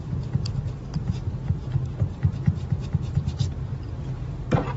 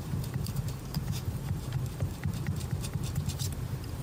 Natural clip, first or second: first